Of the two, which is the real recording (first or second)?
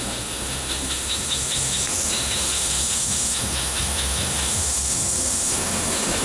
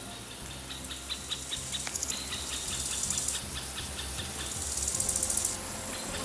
second